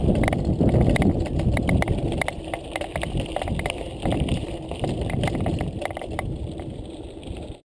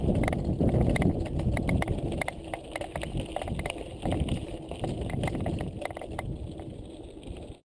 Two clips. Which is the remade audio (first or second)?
first